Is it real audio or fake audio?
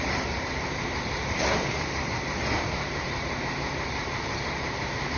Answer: fake